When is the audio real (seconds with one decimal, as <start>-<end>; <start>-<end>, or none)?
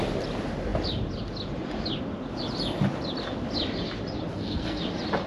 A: 0.0-4.3; 4.8-5.3